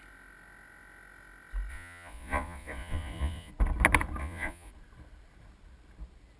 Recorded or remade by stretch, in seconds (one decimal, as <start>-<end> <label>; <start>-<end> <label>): 0.0-1.7 recorded; 1.7-3.5 remade; 3.5-4.2 recorded; 4.2-4.7 remade; 4.7-6.4 recorded